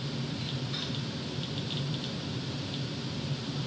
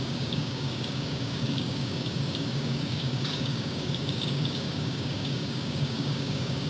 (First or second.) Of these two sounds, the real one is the first